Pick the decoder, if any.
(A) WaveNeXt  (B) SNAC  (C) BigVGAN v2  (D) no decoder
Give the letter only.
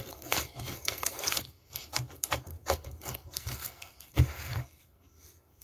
B